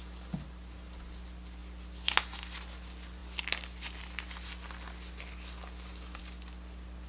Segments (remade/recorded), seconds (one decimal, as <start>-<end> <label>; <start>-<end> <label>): 0.0-7.1 recorded

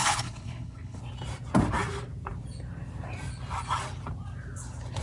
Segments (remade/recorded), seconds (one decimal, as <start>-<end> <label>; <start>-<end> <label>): 0.0-1.0 remade; 1.0-5.0 recorded

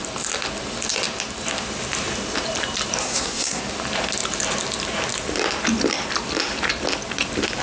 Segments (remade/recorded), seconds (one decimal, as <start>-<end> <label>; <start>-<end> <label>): 0.0-3.0 recorded; 3.0-3.6 remade; 3.6-7.6 recorded

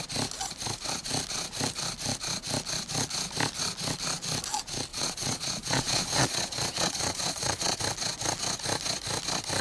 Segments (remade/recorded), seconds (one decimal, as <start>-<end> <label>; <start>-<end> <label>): 0.0-4.9 recorded; 4.9-7.8 remade; 7.8-9.6 recorded